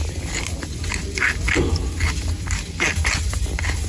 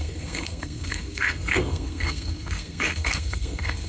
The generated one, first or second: second